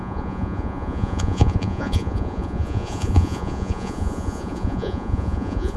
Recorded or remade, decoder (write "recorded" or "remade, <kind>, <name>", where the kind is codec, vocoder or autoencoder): remade, vocoder, Vocos